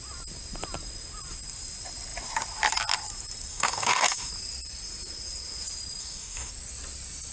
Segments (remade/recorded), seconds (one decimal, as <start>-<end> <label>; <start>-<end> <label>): 0.0-3.5 recorded; 3.5-4.3 remade; 4.3-6.0 recorded; 6.0-6.5 remade; 6.5-7.3 recorded